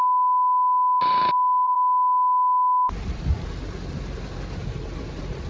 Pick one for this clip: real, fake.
fake